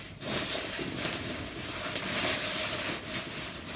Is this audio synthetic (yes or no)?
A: yes